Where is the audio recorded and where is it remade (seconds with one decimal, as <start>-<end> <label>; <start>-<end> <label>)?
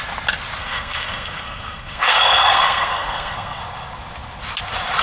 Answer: 0.0-0.6 recorded; 0.6-3.6 remade; 3.6-5.0 recorded